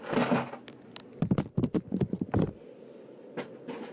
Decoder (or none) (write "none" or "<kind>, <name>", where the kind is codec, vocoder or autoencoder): none